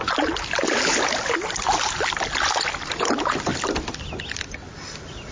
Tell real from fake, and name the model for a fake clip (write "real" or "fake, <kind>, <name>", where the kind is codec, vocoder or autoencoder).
real